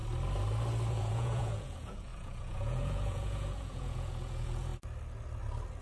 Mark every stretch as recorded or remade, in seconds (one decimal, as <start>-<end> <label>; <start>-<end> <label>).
0.0-0.9 recorded; 0.9-4.7 remade; 4.7-5.8 recorded